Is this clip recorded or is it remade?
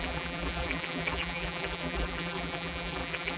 remade